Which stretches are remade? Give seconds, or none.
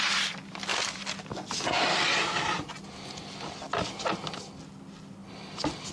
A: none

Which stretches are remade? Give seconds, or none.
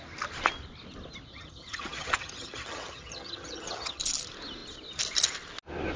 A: 1.3-4.0 (vocoder, HiFi-GAN)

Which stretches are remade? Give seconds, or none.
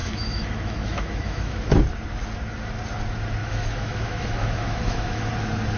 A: 0.0-1.8 (autoencoder, DAC-VAE); 3.4-5.3